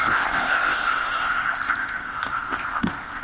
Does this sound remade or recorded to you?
remade